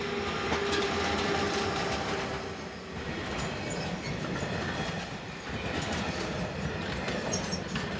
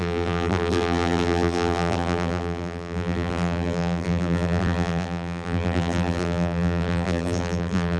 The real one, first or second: first